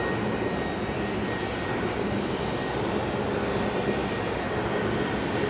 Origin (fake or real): real